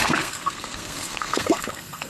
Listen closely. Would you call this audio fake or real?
fake